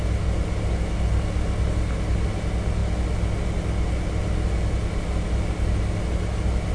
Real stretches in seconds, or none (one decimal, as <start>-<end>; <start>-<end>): 0.0-6.7